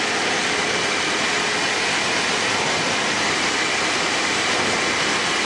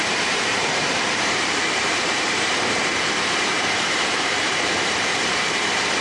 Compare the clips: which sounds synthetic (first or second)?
second